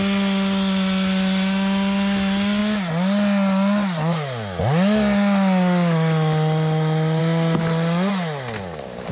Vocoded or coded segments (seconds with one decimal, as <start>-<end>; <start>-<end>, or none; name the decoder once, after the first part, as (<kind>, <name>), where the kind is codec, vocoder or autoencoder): none